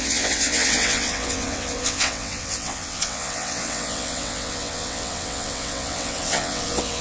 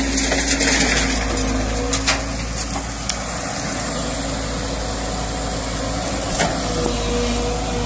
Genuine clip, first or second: second